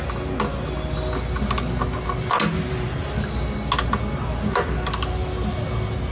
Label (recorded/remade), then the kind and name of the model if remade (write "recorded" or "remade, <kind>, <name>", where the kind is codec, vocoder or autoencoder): recorded